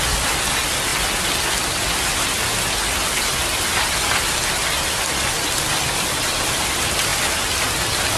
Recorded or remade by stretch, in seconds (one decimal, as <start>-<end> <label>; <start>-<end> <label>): 0.0-8.2 recorded